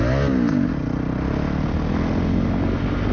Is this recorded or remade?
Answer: recorded